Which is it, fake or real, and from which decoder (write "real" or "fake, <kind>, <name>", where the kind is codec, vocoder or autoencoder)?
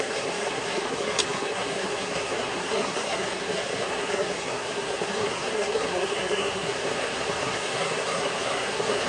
fake, codec, SNAC